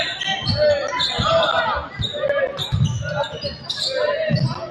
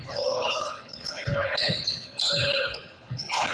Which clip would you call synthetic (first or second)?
second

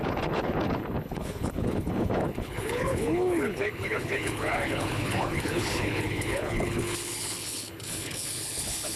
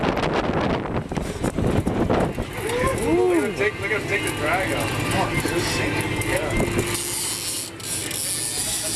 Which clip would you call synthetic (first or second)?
first